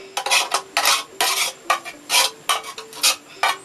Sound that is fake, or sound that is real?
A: real